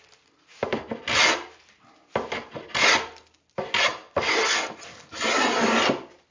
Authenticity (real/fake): real